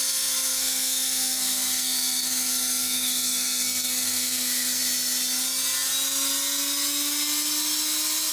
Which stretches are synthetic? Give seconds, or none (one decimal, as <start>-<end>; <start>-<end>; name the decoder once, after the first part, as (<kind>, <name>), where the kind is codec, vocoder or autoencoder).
0.0-4.8 (codec, SNAC)